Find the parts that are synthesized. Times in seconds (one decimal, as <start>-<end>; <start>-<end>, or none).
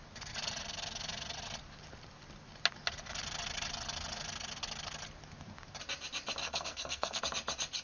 6.4-7.2